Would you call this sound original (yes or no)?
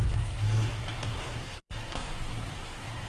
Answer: no